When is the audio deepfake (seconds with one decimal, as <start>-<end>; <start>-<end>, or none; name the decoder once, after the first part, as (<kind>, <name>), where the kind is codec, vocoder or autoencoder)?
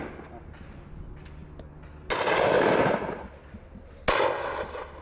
none